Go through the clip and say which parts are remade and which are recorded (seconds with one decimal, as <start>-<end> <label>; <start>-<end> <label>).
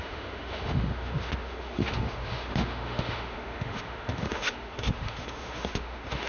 0.0-6.3 remade